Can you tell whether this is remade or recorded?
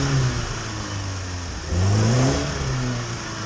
recorded